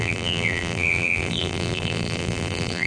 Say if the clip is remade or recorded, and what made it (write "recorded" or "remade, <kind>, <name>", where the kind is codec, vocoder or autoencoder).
remade, vocoder, BigVGAN v2